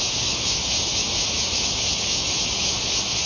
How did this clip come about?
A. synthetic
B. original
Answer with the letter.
A